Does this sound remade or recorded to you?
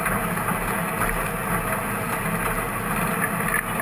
recorded